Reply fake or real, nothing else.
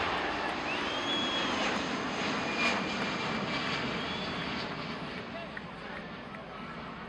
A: real